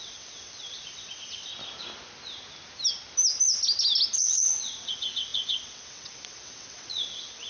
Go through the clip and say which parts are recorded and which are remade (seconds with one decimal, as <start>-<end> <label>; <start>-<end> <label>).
0.0-1.5 remade; 1.5-4.2 recorded; 4.2-7.5 remade